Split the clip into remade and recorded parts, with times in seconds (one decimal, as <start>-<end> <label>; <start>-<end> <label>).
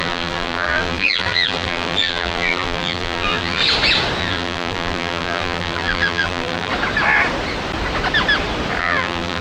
0.0-3.6 remade; 3.6-4.2 recorded; 4.2-6.7 remade; 6.7-8.8 recorded; 8.8-9.4 remade